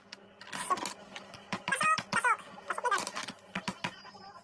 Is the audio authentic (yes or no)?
yes